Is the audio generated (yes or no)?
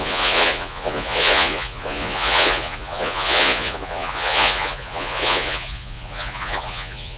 yes